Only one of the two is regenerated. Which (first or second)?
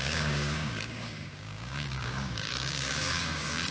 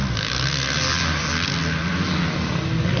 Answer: first